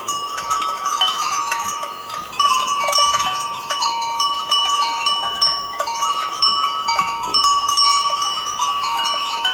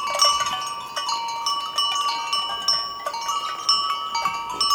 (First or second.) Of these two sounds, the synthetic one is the first